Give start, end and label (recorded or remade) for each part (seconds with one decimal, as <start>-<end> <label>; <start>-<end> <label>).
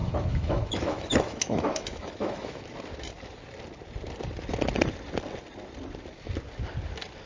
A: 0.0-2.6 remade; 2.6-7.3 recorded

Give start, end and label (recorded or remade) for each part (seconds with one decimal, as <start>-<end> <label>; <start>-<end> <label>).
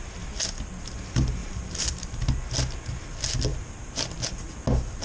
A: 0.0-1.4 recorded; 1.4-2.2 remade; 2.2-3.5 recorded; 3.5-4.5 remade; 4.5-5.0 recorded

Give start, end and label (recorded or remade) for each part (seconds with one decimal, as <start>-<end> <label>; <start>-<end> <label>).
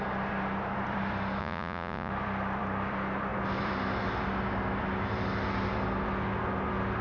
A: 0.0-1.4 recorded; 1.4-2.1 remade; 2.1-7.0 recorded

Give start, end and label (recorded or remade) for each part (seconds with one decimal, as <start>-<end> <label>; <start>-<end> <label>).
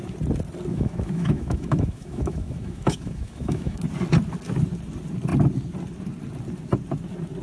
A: 0.0-0.7 recorded; 0.7-3.8 remade; 3.8-7.4 recorded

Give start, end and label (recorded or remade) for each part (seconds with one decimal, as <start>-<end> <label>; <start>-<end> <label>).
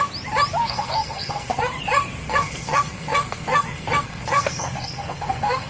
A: 0.0-0.6 recorded; 0.6-1.6 remade; 1.6-2.2 recorded; 2.2-5.7 remade